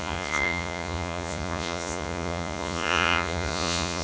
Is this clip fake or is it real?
fake